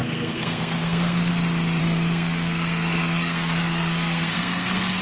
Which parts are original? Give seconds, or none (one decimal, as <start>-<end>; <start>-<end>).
1.3-1.8